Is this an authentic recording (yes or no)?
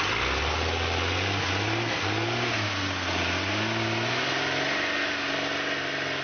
yes